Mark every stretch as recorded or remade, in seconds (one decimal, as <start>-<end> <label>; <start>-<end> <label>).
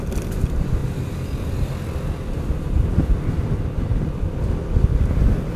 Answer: 0.0-5.6 recorded